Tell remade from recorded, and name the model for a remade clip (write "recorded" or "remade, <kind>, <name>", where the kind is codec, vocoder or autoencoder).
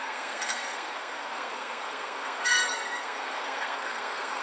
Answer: remade, codec, SNAC